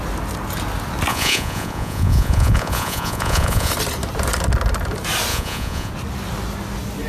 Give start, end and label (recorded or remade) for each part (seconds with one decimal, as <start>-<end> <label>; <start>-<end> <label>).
0.0-1.1 recorded; 1.1-3.7 remade; 3.7-5.3 recorded; 5.3-5.9 remade; 5.9-7.1 recorded